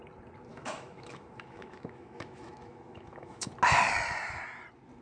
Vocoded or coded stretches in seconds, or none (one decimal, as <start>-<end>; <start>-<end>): 0.5-3.5